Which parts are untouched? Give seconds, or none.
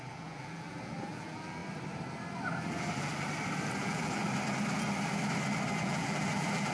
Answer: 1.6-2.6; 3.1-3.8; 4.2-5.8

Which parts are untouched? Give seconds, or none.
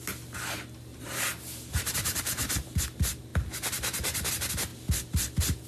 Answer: 0.0-0.9; 2.8-5.7